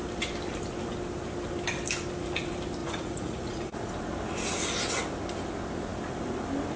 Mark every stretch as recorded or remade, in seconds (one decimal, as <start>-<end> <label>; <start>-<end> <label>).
0.0-2.8 recorded; 2.8-3.9 remade; 3.9-6.8 recorded